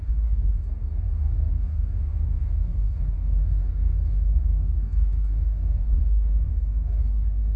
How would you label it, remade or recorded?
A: remade